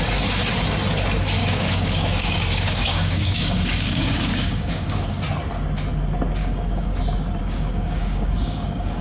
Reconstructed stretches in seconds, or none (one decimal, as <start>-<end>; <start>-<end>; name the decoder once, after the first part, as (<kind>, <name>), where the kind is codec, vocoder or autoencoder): 1.4-5.2 (codec, DAC); 6.4-7.0; 7.4-9.0